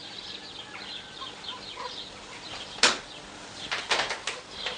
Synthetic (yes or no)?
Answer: no